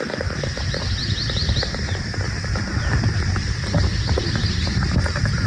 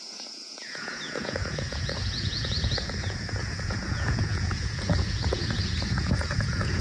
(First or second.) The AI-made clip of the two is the second